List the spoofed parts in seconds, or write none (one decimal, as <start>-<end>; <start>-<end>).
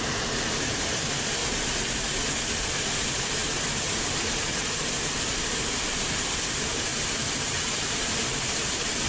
0.0-1.4; 2.4-9.1